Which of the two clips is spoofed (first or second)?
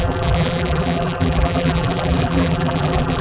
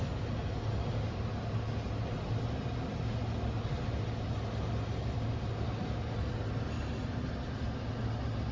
first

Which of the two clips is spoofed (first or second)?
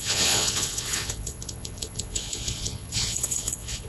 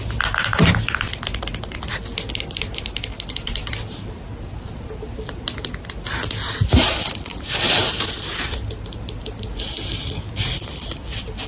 first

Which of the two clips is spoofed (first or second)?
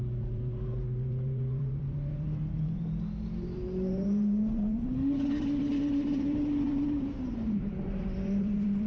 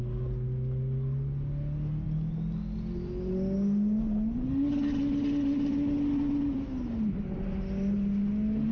first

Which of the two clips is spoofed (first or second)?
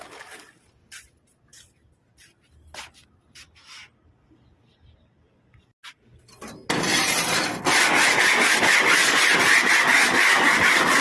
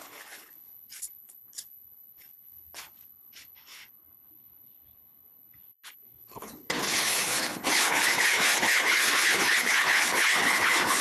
second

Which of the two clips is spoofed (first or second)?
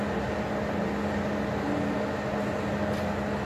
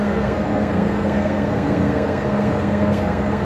second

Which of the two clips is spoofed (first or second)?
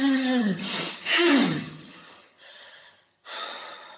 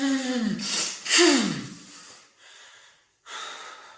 first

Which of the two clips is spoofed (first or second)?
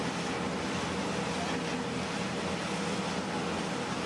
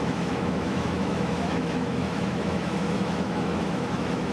second